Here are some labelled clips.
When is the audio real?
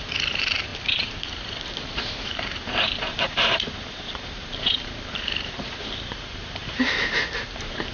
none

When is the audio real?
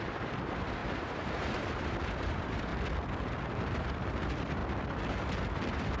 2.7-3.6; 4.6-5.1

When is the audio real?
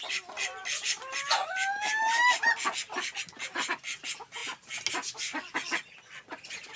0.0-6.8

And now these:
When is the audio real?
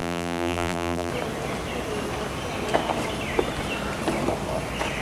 1.1-5.0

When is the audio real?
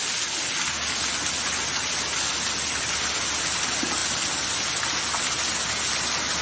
0.0-6.4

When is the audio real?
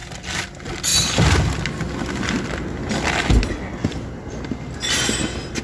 0.0-5.6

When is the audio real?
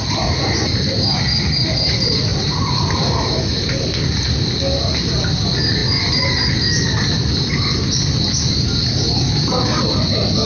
0.0-2.3; 3.7-10.5